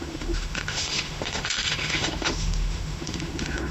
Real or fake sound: fake